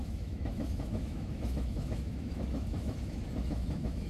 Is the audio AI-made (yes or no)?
yes